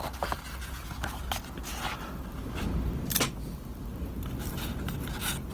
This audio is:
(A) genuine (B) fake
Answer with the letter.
A